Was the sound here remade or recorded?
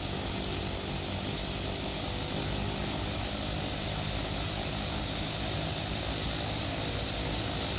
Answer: recorded